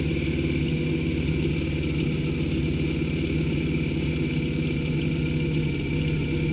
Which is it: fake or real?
real